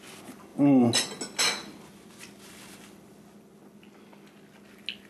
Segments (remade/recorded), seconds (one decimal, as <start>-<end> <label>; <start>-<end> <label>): 0.0-5.1 recorded